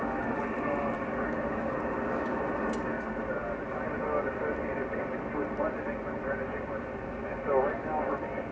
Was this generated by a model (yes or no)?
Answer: no